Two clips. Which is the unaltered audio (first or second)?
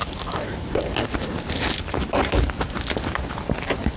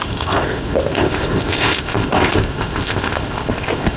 first